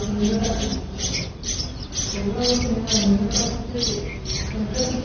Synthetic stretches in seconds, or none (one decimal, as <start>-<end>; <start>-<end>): none